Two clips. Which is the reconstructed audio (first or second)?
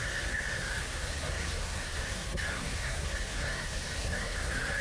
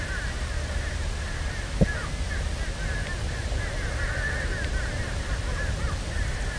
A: first